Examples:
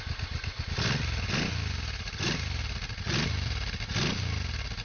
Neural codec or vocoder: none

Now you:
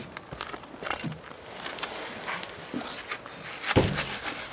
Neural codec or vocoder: none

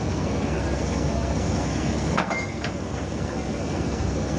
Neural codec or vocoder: codec, SNAC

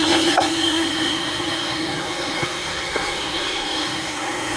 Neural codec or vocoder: codec, SNAC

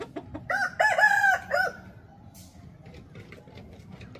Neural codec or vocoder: none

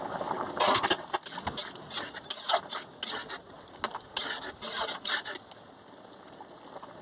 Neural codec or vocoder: none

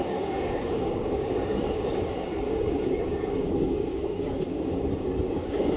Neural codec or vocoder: codec, DAC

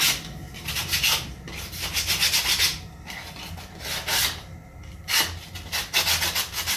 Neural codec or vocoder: none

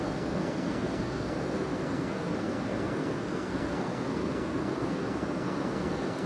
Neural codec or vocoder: codec, SNAC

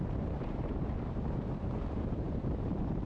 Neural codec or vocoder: vocoder, BigVGAN v2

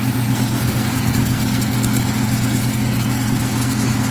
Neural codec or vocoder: codec, SNAC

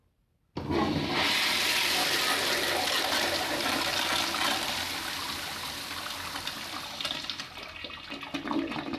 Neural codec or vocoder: none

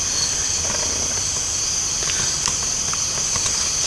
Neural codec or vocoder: none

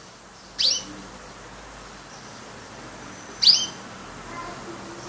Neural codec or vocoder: vocoder, BigVGAN v2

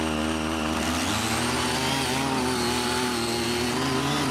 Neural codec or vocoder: none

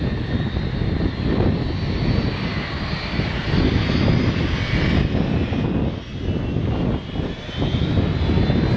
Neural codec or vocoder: none